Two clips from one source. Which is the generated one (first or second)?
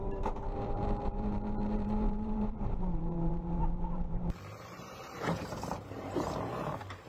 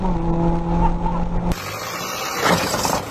first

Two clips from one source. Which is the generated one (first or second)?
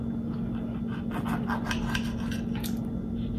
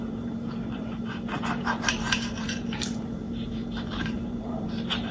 second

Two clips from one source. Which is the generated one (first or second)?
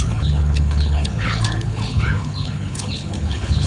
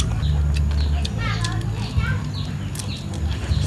first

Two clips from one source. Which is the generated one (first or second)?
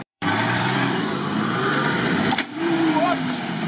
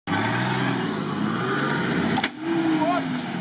first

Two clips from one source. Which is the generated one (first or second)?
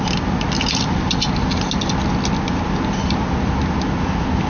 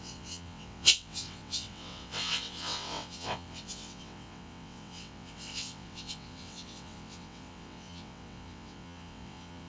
second